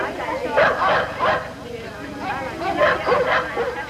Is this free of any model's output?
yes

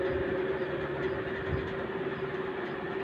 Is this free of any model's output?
yes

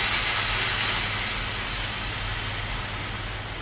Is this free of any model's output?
yes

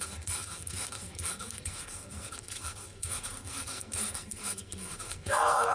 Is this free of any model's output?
no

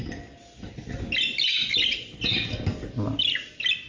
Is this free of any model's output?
yes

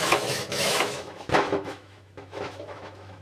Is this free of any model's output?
no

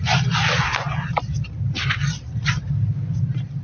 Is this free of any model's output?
yes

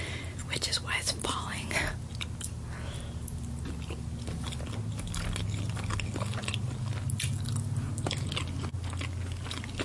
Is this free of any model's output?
yes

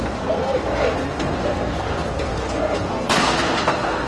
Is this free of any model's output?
no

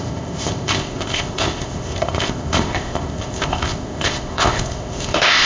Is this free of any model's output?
no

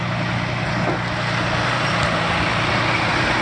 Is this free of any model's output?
yes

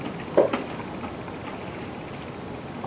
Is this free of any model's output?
yes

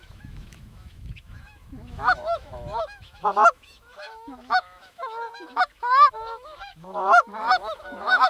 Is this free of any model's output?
no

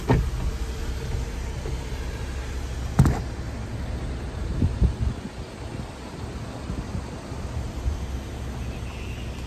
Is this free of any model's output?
yes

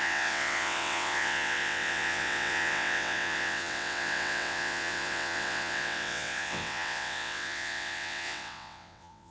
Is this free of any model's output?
no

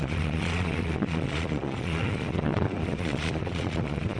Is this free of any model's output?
no